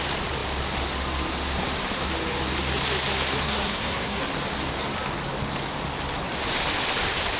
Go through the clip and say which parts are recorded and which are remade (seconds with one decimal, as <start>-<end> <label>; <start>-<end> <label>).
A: 0.0-3.4 recorded; 3.4-4.2 remade; 4.2-7.4 recorded